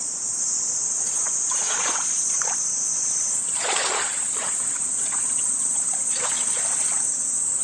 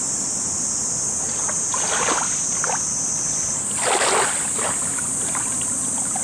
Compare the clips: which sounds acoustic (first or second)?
second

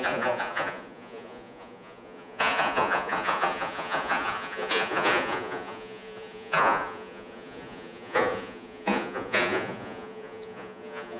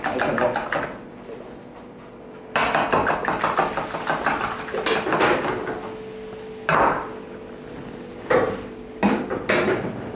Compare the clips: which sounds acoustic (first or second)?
second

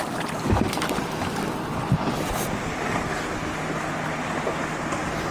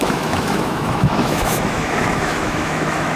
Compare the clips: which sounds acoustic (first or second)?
first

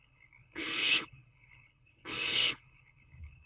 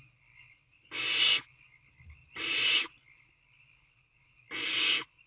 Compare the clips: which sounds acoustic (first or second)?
second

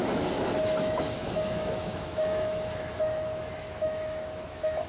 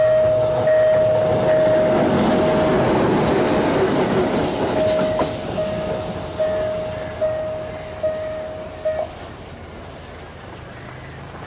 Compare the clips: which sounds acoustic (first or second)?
second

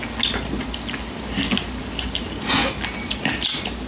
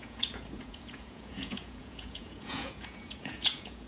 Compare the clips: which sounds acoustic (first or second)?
first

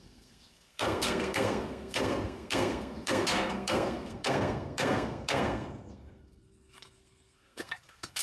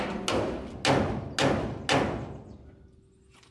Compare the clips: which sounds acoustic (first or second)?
second